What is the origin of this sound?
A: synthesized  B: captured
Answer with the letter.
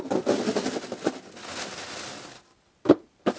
B